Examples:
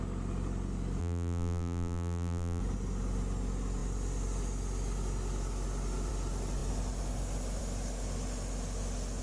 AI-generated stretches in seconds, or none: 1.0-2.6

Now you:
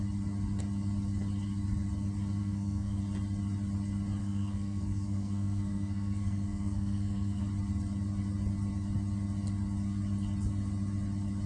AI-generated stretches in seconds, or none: 2.4-3.0; 4.2-7.4

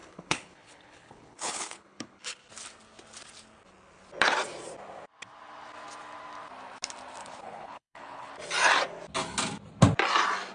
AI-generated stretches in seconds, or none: 0.0-2.4; 7.2-8.3